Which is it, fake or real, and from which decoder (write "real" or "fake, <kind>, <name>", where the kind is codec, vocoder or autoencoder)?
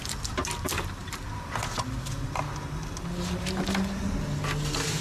real